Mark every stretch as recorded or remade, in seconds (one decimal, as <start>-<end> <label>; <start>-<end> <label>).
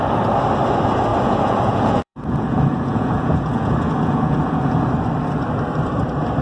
0.0-1.1 recorded; 1.1-4.9 remade; 4.9-6.4 recorded